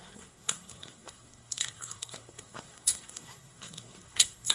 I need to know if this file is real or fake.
fake